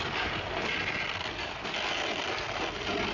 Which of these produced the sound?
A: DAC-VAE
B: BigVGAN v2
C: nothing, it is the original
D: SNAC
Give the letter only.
C